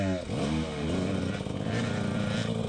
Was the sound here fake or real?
real